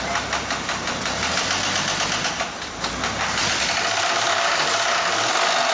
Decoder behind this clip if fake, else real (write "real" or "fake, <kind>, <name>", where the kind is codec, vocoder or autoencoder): real